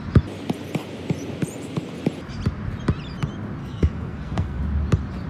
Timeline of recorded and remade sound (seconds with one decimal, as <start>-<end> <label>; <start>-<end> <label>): 0.0-3.6 recorded; 3.6-4.6 remade; 4.6-5.3 recorded